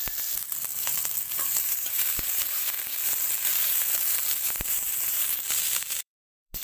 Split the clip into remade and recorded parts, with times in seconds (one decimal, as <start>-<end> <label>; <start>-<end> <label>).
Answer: 0.0-0.7 recorded; 0.7-2.7 remade; 2.7-3.5 recorded; 3.5-6.6 remade